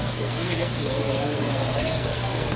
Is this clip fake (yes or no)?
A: yes